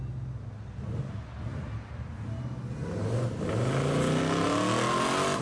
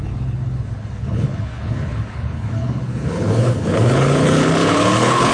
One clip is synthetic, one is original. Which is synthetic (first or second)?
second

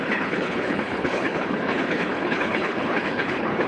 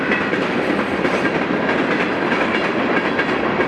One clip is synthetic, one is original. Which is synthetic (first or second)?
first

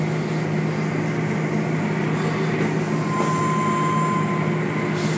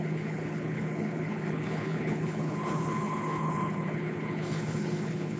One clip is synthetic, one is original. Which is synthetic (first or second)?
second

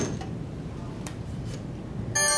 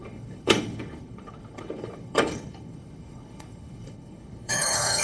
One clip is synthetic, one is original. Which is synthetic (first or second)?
second